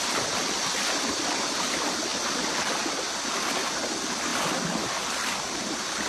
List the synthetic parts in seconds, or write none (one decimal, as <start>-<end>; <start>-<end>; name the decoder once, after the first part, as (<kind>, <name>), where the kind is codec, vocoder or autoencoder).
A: none